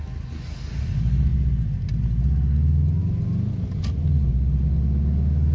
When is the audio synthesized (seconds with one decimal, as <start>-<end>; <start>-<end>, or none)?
none

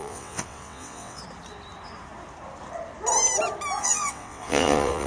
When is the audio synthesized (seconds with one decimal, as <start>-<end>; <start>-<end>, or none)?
0.0-1.2; 3.8-5.1